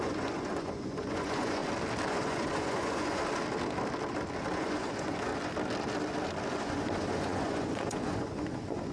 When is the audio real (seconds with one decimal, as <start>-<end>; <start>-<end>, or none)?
1.6-2.1; 3.2-4.5; 5.3-6.5